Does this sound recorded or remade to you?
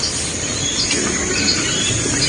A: recorded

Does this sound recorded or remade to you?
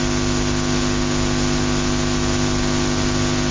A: recorded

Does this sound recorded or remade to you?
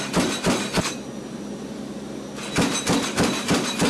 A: recorded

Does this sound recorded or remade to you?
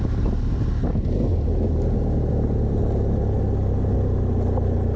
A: recorded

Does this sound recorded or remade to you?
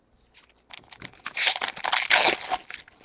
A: recorded